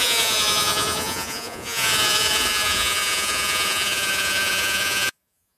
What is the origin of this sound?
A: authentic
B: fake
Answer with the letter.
B